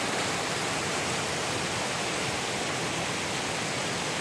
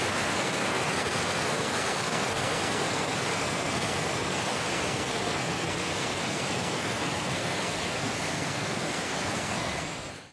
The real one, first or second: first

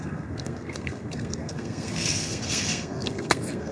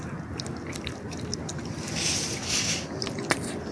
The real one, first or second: second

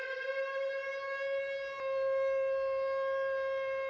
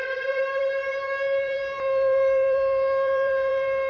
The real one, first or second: first